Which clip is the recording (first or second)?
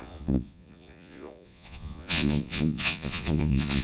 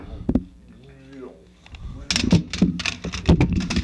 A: second